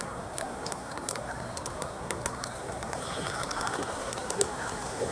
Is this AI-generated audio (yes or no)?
yes